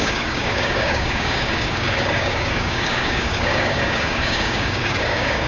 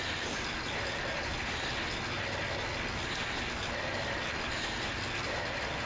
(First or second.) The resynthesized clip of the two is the first